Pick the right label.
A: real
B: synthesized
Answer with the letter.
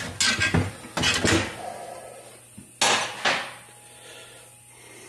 A